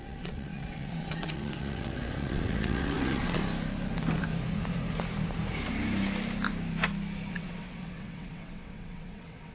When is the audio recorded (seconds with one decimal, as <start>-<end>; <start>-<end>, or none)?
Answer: 3.4-7.3